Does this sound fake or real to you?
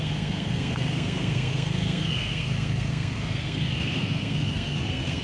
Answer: fake